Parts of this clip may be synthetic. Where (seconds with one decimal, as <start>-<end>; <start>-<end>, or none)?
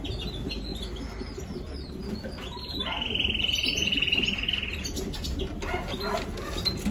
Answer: none